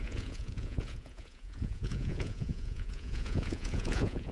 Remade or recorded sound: remade